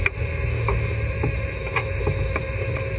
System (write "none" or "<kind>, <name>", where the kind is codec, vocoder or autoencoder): none